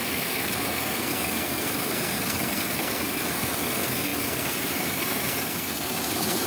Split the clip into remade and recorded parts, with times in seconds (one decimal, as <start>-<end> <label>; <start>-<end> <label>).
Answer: 0.0-6.5 remade